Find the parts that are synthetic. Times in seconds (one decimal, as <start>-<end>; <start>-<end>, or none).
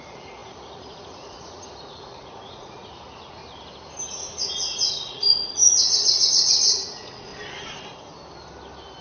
0.0-3.4; 4.1-5.6; 6.3-7.3